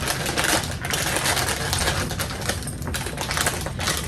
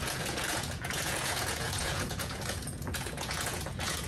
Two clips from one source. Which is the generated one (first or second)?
second